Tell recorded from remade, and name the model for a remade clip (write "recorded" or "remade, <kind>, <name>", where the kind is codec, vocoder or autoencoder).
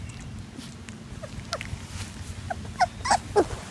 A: recorded